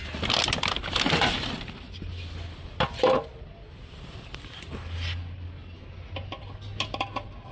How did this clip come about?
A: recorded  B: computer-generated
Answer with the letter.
A